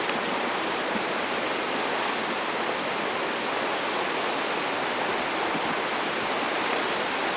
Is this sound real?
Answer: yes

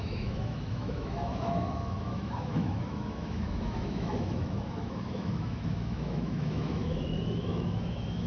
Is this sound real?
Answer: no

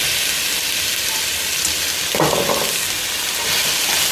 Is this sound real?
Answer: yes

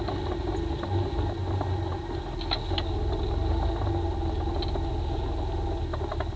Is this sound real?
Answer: yes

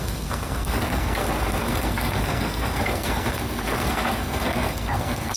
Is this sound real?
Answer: no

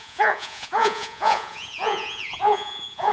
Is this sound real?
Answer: no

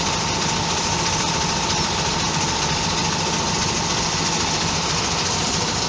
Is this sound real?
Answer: yes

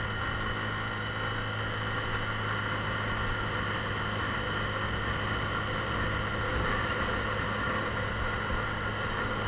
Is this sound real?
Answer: yes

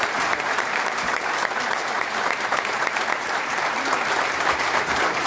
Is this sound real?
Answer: no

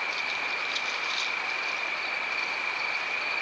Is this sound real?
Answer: yes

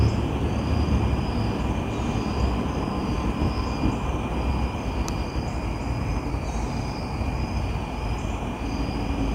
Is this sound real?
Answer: yes